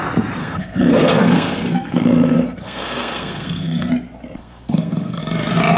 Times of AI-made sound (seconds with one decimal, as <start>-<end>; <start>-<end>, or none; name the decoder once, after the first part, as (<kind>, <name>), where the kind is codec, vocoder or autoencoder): 0.4-3.9 (codec, SNAC); 4.4-5.2